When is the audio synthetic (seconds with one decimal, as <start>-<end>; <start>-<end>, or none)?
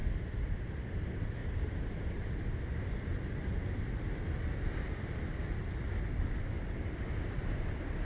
0.7-1.4; 2.6-3.1; 7.2-8.1